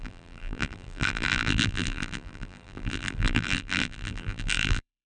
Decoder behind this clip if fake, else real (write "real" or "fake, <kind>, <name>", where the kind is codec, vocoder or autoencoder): fake, vocoder, BigVGAN v2